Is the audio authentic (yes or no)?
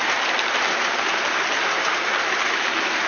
yes